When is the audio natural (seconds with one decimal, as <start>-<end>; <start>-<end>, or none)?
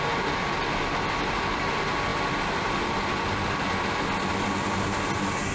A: 0.0-2.1; 3.7-5.5